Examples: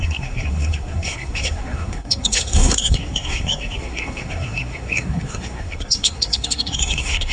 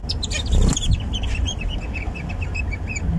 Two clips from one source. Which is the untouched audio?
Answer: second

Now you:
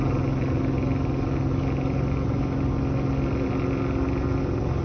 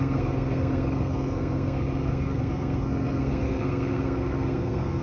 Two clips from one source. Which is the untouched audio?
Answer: first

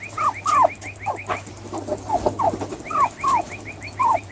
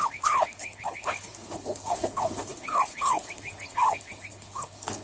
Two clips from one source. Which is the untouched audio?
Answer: first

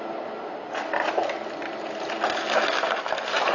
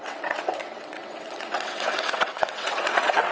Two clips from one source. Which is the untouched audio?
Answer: first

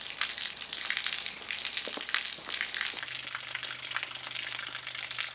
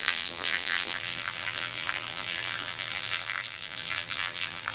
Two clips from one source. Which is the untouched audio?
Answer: first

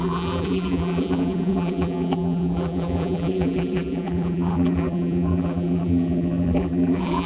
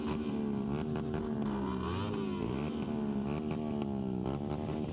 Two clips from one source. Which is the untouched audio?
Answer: second